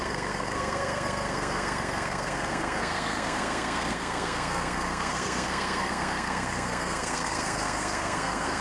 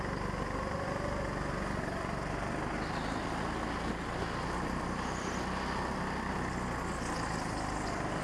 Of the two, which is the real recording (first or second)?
second